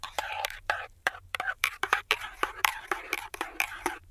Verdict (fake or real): fake